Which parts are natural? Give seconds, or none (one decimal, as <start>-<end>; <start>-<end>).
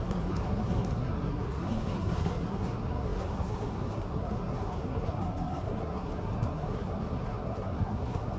none